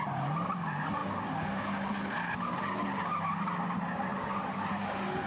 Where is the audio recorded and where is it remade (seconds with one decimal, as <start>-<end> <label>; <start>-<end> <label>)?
0.0-5.3 recorded